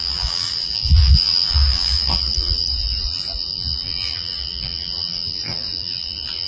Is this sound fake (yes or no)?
yes